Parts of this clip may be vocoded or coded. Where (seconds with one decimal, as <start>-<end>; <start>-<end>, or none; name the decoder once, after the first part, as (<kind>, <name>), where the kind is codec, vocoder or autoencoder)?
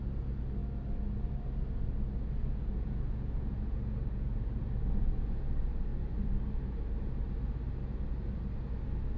2.4-5.5 (vocoder, Vocos)